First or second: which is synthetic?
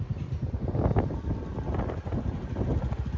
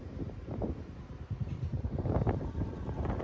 second